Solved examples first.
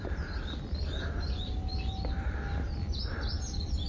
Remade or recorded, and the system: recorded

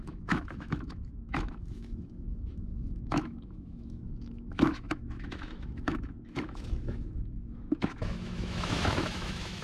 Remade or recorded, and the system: remade, autoencoder, DAC-VAE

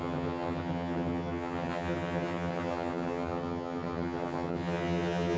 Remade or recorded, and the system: remade, vocoder, HiFi-GAN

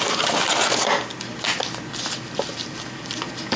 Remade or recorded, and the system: recorded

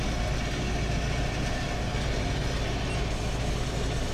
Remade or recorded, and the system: recorded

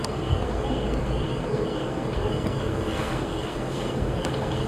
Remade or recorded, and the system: remade, codec, SNAC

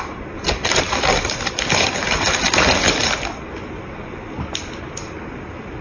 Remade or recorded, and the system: remade, vocoder, BigVGAN v2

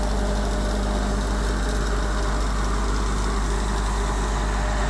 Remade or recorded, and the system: recorded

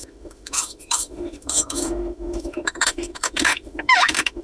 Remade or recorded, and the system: remade, autoencoder, DAC-VAE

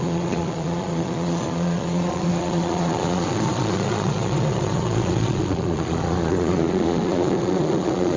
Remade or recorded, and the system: remade, vocoder, Vocos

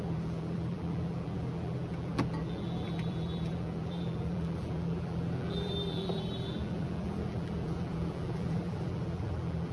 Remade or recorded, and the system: remade, vocoder, BigVGAN v2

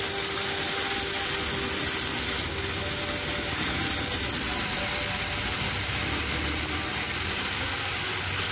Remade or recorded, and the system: recorded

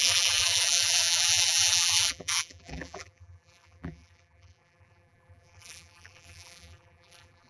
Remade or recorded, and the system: remade, vocoder, BigVGAN v2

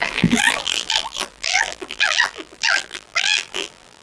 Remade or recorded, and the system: remade, vocoder, BigVGAN v2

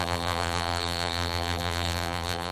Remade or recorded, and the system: remade, vocoder, BigVGAN v2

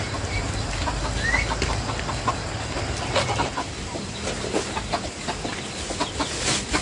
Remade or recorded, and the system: recorded